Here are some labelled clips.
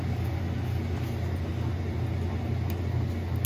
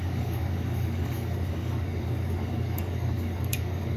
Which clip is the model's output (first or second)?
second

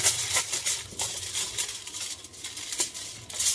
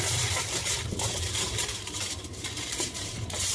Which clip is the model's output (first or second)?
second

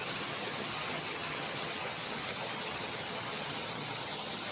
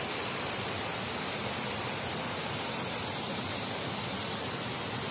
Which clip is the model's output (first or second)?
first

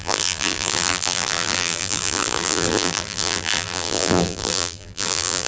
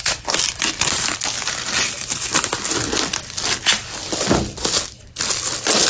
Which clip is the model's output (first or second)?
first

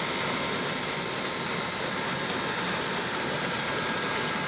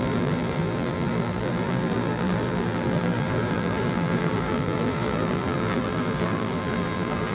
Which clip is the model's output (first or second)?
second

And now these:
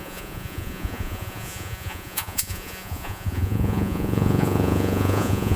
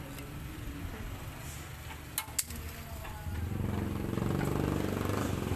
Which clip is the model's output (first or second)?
first